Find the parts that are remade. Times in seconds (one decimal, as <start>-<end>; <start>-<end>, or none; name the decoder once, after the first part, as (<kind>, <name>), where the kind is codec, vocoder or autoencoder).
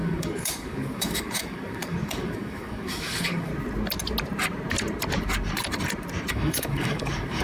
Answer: 0.0-3.5 (codec, DAC); 6.3-7.4